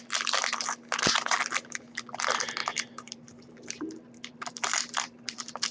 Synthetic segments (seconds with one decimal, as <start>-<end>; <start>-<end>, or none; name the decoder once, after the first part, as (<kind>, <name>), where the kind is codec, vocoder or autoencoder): 2.6-5.7 (vocoder, BigVGAN v2)